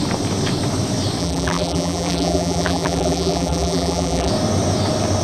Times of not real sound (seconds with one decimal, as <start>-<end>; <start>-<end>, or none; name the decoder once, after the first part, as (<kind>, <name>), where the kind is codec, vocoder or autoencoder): 1.2-4.3 (vocoder, BigVGAN v2)